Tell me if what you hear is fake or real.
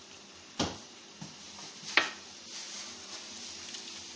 real